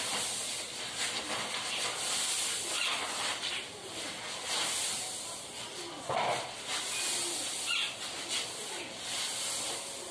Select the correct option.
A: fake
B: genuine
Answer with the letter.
B